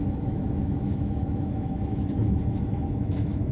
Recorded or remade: remade